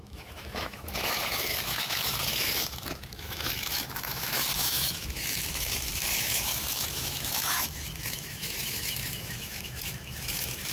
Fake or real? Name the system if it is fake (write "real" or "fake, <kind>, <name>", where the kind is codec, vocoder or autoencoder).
fake, autoencoder, DAC-VAE